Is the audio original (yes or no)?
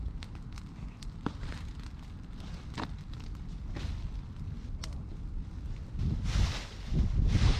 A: yes